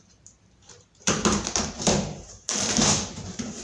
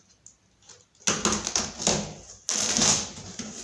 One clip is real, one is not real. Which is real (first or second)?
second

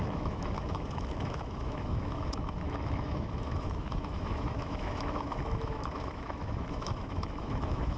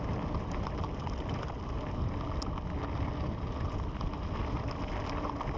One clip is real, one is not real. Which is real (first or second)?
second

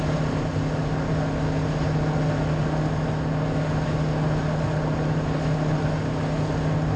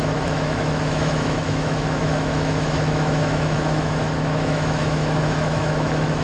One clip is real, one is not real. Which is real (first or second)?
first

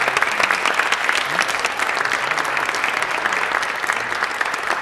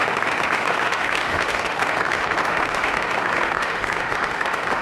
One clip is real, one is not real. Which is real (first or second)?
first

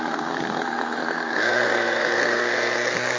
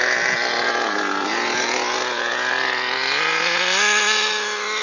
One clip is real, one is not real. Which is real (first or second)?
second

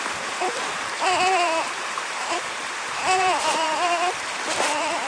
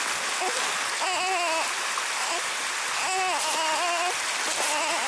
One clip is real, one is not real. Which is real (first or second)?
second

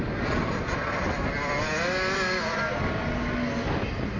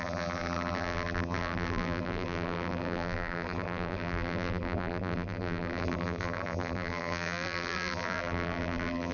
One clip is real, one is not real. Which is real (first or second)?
first